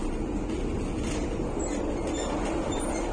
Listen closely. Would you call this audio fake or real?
real